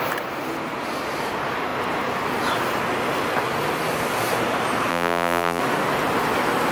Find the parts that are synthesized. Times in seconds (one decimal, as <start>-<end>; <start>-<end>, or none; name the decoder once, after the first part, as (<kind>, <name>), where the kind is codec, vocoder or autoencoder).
4.9-5.6 (vocoder, BigVGAN v2)